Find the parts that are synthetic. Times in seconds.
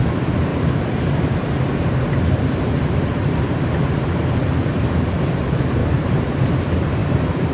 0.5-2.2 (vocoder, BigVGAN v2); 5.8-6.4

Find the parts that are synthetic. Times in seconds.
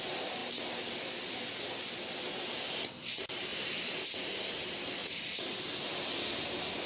0.0-0.4 (vocoder, BigVGAN v2); 2.7-3.5; 4.1-5.0; 6.2-6.9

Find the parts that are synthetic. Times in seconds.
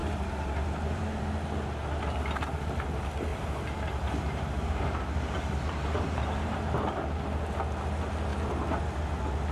0.0-1.2 (vocoder, BigVGAN v2); 3.3-7.2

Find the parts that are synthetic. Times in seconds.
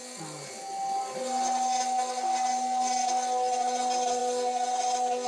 none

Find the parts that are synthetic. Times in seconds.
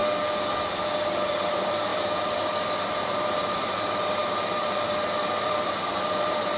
1.3-6.6 (vocoder, BigVGAN v2)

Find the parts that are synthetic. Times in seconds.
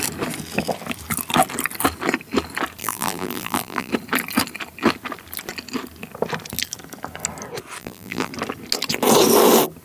2.8-3.9 (vocoder, BigVGAN v2); 7.8-8.3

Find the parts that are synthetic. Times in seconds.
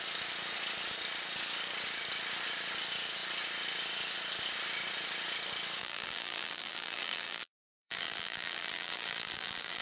5.8-9.8 (vocoder, BigVGAN v2)